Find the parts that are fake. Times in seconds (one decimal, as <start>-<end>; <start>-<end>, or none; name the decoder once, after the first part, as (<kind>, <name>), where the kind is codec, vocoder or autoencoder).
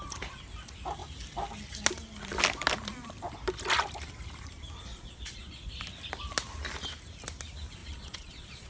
4.9-5.7 (vocoder, Vocos); 7.8-8.7